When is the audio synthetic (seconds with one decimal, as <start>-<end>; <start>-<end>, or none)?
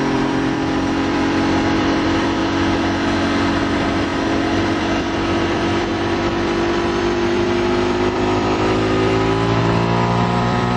0.0-2.4; 3.6-10.8